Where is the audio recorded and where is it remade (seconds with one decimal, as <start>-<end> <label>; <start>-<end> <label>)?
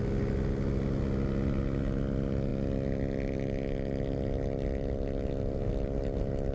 0.0-6.5 recorded